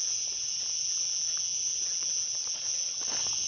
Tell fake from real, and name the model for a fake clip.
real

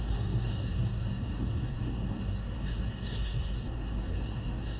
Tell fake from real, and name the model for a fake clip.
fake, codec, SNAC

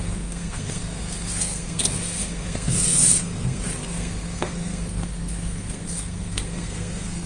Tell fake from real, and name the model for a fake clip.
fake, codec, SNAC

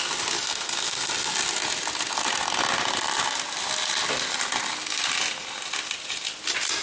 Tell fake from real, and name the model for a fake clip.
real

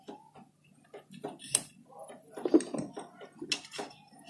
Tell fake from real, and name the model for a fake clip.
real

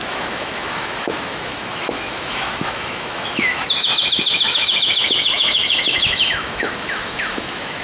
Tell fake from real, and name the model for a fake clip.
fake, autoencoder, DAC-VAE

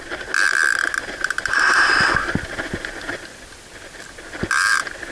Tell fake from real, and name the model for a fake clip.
real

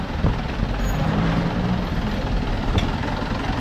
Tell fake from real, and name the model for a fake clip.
fake, vocoder, BigVGAN v2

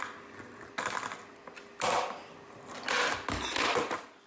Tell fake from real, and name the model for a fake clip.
real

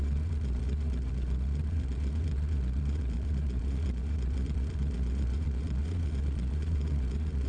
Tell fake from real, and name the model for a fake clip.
fake, vocoder, Vocos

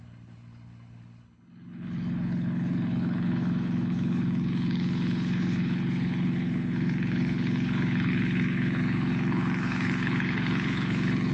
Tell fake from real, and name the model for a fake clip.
fake, codec, HILCodec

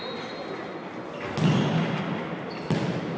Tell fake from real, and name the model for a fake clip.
real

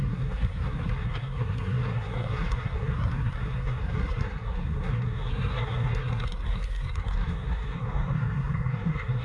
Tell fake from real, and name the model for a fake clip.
fake, codec, SNAC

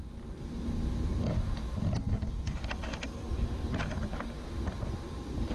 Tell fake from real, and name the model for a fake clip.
real